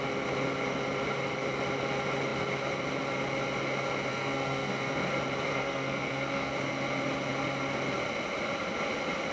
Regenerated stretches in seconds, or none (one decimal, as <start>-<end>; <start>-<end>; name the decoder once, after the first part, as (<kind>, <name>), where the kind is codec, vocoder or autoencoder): 4.1-5.1 (codec, SNAC); 5.5-6.5